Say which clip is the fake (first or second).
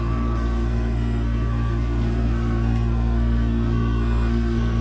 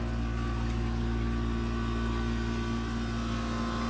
first